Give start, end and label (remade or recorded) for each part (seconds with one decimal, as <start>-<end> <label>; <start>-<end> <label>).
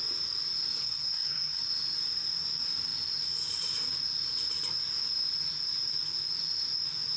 0.0-0.8 recorded; 0.8-1.6 remade; 1.6-7.2 recorded